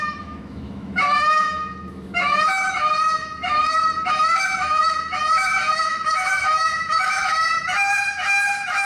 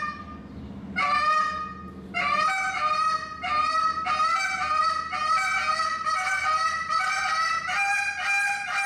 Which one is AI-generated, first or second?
first